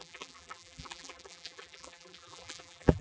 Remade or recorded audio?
remade